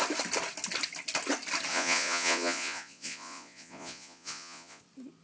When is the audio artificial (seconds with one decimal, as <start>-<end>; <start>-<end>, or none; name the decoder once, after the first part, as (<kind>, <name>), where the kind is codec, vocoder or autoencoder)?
1.7-4.8 (vocoder, Vocos)